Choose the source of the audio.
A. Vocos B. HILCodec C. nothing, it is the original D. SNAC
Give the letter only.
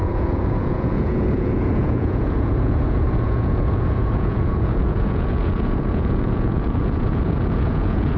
A